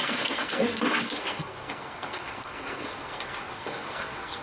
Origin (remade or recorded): remade